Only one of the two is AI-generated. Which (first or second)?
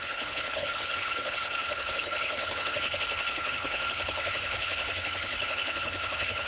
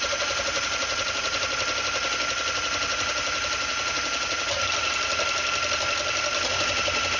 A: first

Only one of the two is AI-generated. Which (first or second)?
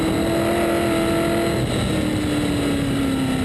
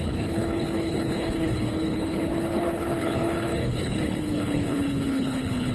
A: second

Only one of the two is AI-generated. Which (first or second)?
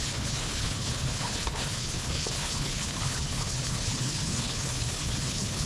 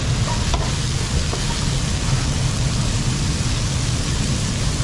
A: first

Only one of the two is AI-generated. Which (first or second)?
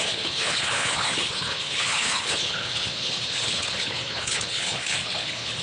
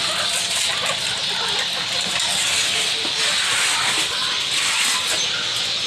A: first